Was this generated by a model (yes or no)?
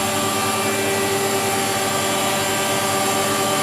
no